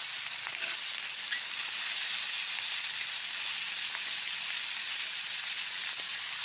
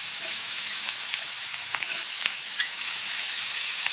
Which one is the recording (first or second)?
first